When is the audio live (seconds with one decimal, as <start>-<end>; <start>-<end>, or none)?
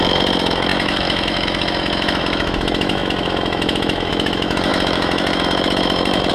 none